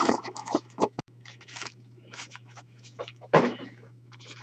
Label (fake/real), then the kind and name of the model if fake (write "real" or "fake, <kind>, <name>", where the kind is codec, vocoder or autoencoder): fake, autoencoder, DAC-VAE